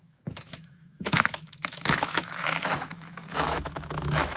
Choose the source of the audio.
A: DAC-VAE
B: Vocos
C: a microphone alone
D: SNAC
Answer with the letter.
A